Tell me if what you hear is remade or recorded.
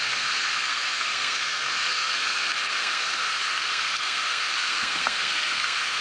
remade